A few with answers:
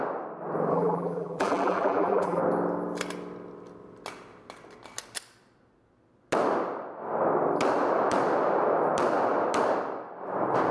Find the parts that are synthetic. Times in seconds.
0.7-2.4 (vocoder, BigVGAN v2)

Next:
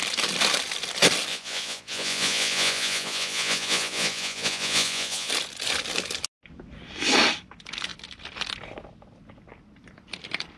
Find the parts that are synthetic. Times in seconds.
1.3-5.3 (vocoder, Vocos)

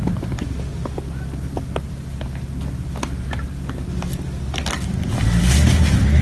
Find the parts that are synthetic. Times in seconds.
none

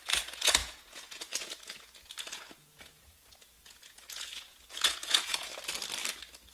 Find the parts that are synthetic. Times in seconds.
0.0-5.5 (vocoder, Vocos)

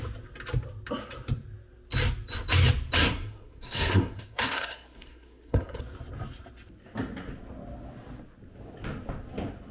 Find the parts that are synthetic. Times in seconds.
3.0-5.8 (codec, SNAC)

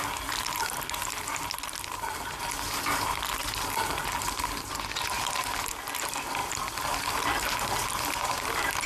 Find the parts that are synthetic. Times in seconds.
none

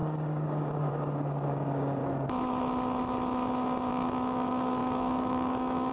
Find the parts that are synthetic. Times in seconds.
0.0-2.0 (codec, DAC); 3.9-5.9

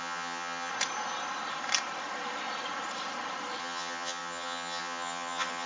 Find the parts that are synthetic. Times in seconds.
0.0-0.7 (vocoder, HiFi-GAN); 3.6-5.7